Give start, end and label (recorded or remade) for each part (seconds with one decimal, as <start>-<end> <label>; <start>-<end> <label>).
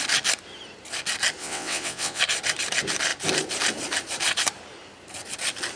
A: 0.0-1.4 recorded; 1.4-2.2 remade; 2.2-5.8 recorded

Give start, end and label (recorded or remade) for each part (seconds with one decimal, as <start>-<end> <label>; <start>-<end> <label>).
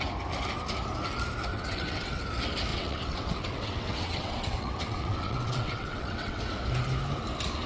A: 0.0-1.5 recorded; 1.5-2.2 remade; 2.2-2.7 recorded; 2.7-6.4 remade; 6.4-7.7 recorded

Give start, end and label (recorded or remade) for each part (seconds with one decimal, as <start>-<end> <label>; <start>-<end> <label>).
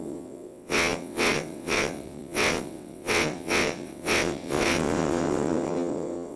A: 0.0-6.4 remade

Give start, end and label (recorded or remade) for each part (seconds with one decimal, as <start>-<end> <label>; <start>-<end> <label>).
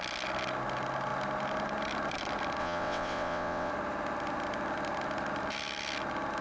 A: 0.0-2.6 recorded; 2.6-3.7 remade; 3.7-6.4 recorded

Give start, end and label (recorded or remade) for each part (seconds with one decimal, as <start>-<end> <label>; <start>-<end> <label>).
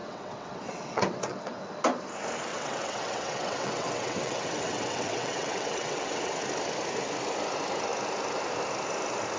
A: 0.0-1.6 remade; 1.6-2.5 recorded; 2.5-6.4 remade; 6.4-9.4 recorded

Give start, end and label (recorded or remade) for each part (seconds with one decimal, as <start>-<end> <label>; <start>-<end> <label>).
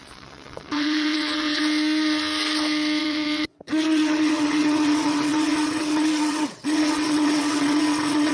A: 0.0-1.6 remade; 1.6-3.0 recorded; 3.0-8.3 remade